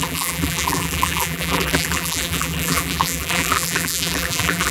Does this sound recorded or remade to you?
remade